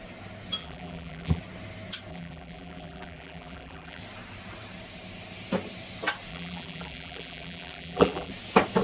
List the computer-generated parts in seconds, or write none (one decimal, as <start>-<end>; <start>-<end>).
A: 0.6-1.4; 2.1-4.0; 6.3-8.3